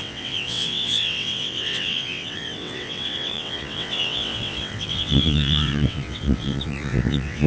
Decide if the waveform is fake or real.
fake